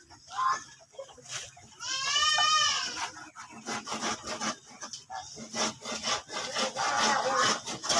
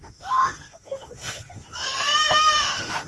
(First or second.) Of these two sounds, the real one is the first